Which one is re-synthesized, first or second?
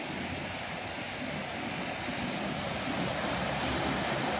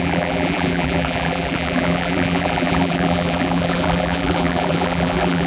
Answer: second